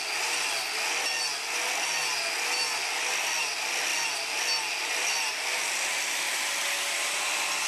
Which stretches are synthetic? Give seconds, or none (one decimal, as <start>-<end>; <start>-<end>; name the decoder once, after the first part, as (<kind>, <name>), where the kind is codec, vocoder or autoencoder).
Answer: none